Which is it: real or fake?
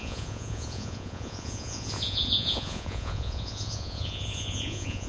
fake